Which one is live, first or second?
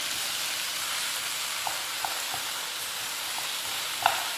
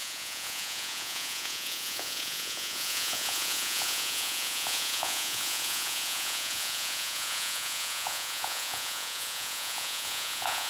first